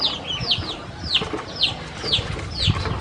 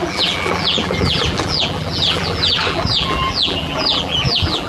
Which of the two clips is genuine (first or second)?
first